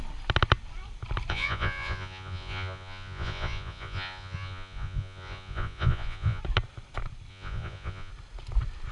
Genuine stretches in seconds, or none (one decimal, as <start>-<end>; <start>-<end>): 0.0-1.3; 6.4-7.3; 8.1-8.9